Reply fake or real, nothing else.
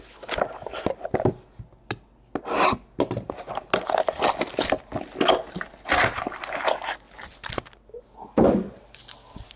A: real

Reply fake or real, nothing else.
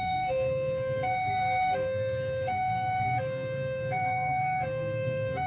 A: fake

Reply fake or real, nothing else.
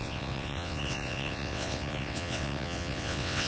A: fake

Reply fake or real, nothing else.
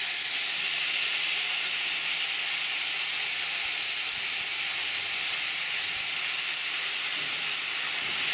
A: real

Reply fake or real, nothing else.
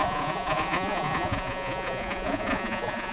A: fake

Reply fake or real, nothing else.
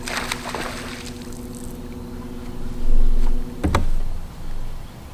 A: real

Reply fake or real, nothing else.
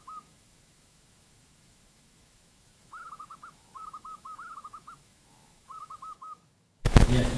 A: fake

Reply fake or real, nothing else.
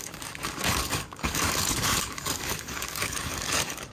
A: fake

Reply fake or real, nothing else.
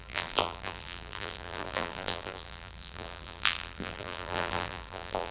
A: fake